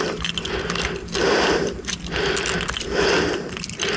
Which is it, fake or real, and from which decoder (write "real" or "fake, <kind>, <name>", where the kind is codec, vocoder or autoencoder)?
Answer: real